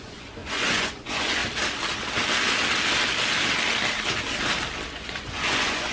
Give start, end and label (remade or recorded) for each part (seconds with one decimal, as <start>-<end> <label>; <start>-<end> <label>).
0.0-1.4 remade; 1.4-4.9 recorded; 4.9-5.9 remade